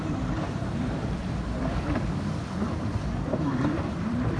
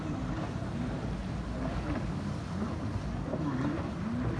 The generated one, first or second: first